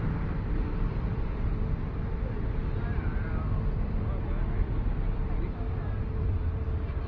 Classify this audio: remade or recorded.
remade